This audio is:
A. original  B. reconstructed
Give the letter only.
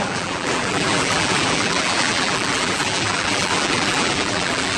B